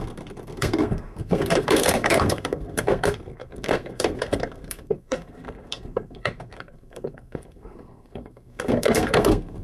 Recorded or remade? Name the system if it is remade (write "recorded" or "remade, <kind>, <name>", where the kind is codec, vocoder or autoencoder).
remade, codec, SNAC